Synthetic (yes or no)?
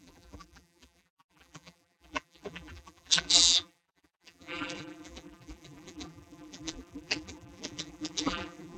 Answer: yes